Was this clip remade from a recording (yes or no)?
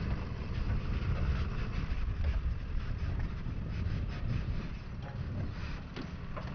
no